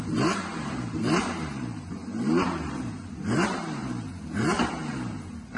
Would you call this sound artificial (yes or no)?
yes